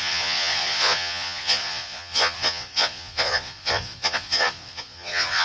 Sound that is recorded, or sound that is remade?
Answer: remade